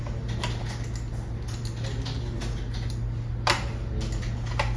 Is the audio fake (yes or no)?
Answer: no